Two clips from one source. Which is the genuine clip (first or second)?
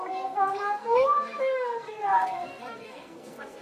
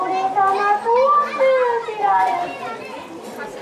second